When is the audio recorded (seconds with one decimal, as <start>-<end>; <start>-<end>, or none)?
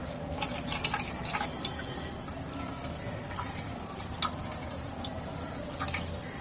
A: 0.0-6.4